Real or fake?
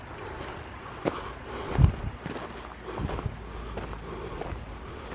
real